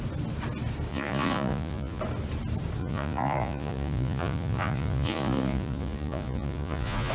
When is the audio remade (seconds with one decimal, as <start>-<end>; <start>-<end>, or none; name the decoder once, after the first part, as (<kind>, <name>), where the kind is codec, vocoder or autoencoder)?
0.9-2.0 (vocoder, Vocos); 2.8-7.1